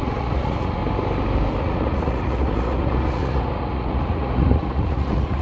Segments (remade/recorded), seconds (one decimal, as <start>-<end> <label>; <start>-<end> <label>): 0.0-0.8 remade; 0.8-1.6 recorded; 1.6-5.4 remade